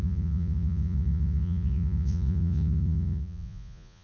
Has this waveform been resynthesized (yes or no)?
yes